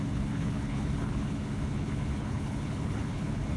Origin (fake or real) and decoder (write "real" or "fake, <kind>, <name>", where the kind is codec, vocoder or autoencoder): fake, codec, HILCodec